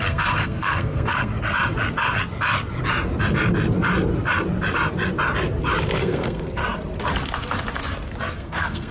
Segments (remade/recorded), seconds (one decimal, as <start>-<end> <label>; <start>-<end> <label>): 0.0-1.3 remade; 1.3-6.0 recorded; 6.0-6.6 remade; 6.6-8.4 recorded; 8.4-8.9 remade